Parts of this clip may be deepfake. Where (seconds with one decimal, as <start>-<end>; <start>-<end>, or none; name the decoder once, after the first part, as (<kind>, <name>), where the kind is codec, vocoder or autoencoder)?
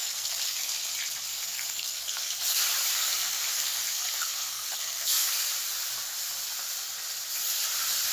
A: 0.0-0.7 (codec, SNAC); 1.3-2.6; 3.0-5.5